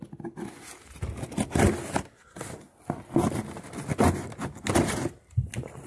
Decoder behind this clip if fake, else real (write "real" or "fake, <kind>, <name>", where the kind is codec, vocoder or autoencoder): real